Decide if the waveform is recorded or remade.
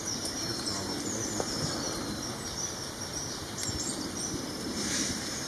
remade